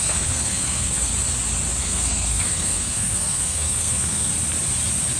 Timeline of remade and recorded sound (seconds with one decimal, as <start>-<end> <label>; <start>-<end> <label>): 0.0-1.1 remade; 1.1-1.8 recorded; 1.8-4.3 remade; 4.3-5.2 recorded